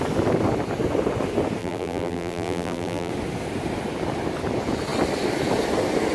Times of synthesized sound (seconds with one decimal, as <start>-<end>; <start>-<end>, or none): 1.6-3.1